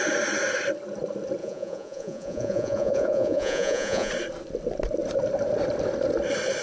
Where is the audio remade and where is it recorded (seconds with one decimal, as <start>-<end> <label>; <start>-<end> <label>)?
0.0-1.4 recorded; 1.4-4.1 remade; 4.1-6.6 recorded